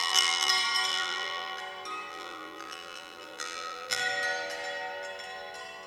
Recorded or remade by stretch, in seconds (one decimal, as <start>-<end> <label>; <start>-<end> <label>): 0.0-0.5 remade; 0.5-0.9 recorded; 0.9-1.6 remade; 1.6-2.1 recorded; 2.1-4.0 remade; 4.0-5.9 recorded